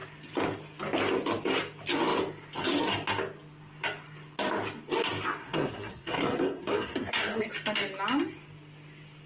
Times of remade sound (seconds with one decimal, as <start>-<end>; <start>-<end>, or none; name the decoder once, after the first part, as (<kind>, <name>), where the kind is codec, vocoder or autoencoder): 5.4-7.5 (codec, SNAC)